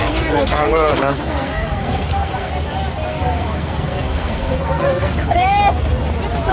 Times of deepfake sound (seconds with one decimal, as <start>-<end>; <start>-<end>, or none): 0.0-2.5; 3.1-5.6